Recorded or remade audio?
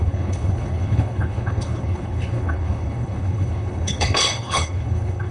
remade